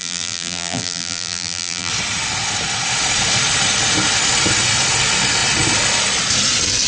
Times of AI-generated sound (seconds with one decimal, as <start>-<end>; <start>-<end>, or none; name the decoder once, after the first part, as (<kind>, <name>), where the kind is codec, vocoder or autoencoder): 0.0-1.9 (vocoder, BigVGAN v2)